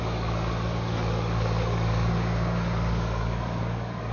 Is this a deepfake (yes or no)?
yes